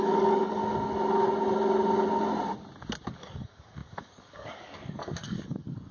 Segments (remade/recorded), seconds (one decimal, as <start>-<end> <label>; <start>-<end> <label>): 0.0-0.6 remade; 0.6-3.0 recorded; 3.0-5.9 remade